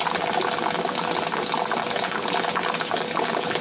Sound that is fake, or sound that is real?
real